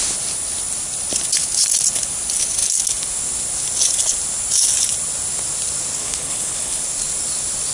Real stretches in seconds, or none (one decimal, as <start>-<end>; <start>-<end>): 0.0-6.0; 6.8-7.7